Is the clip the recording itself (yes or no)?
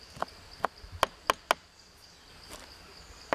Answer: yes